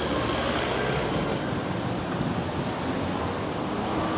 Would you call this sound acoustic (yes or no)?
yes